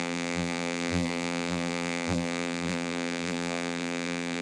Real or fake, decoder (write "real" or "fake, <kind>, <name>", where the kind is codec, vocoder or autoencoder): fake, vocoder, BigVGAN v2